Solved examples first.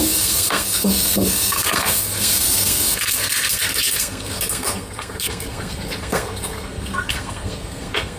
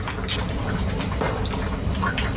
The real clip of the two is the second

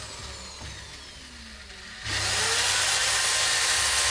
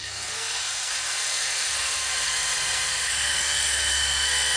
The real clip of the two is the first